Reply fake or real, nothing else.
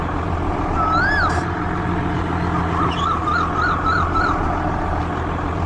real